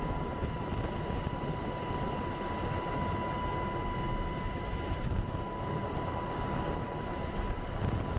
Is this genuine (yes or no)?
yes